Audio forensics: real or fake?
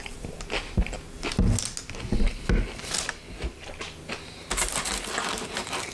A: real